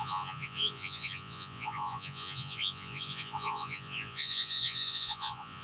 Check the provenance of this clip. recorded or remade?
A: remade